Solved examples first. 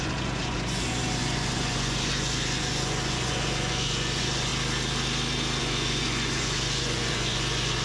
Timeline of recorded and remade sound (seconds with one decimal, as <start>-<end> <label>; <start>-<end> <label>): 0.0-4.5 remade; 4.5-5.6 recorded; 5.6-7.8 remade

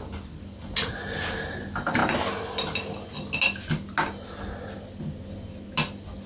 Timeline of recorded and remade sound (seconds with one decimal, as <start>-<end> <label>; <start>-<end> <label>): 0.0-6.3 recorded

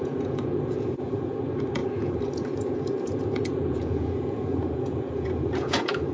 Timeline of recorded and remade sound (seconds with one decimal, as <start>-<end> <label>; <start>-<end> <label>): 0.0-6.1 remade

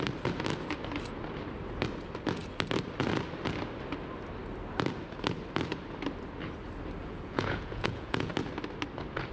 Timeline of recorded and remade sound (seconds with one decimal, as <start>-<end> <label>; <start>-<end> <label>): 0.0-7.0 recorded; 7.0-8.3 remade; 8.3-9.3 recorded